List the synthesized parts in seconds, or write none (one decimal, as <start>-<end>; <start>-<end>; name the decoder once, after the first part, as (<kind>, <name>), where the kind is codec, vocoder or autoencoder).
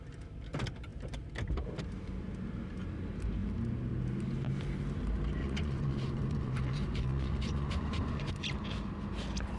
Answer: 5.4-8.3 (vocoder, Vocos)